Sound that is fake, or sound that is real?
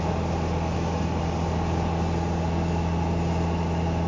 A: real